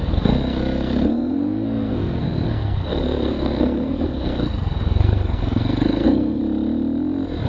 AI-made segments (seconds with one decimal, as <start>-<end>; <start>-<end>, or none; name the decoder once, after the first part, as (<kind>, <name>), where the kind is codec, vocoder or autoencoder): 0.0-6.4 (codec, SNAC)